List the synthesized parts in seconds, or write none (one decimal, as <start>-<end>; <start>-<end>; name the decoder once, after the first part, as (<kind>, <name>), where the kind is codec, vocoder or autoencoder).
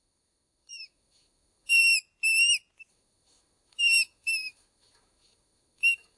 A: 0.0-1.8 (autoencoder, DAC-VAE); 2.9-6.2